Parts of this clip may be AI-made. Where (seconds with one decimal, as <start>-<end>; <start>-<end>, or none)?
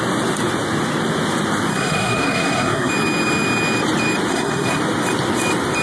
1.7-2.9; 4.3-4.8